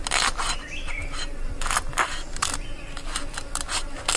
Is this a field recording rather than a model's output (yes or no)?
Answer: yes